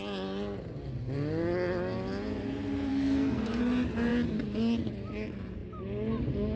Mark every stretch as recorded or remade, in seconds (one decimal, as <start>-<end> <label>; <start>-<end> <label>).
0.0-2.9 recorded; 2.9-3.6 remade; 3.6-6.6 recorded